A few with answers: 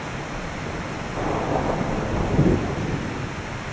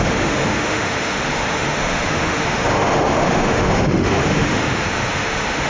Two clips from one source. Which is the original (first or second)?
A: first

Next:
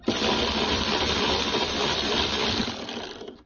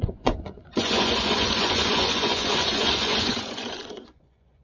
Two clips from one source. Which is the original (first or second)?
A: first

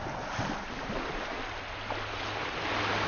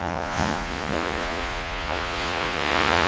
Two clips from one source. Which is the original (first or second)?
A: first